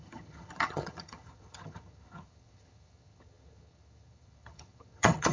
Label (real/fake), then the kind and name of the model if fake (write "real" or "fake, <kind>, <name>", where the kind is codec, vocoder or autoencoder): fake, vocoder, HiFi-GAN